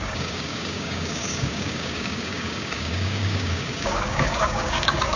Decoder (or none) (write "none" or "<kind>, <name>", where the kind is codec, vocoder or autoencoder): codec, DAC